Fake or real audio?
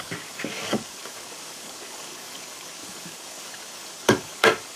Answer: fake